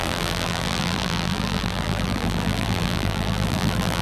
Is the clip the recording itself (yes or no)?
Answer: no